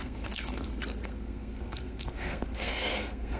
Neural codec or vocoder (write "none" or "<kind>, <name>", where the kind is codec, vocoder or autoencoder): codec, SNAC